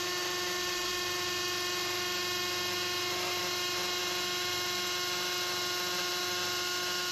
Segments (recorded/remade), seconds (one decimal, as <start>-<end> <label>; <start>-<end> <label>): 0.0-7.1 recorded